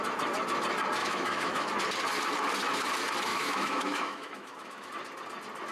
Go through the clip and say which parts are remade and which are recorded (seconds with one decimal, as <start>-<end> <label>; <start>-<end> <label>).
0.0-1.0 recorded; 1.0-1.7 remade; 1.7-3.3 recorded; 3.3-4.9 remade; 4.9-5.7 recorded